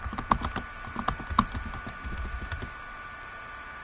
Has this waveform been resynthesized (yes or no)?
no